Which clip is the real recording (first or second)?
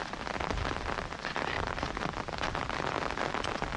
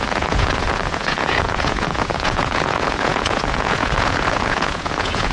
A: first